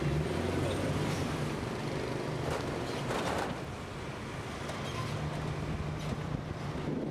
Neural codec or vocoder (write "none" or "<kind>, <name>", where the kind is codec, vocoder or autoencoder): none